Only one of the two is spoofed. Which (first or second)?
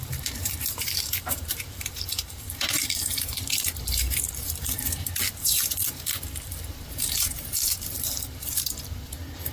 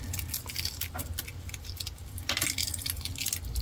first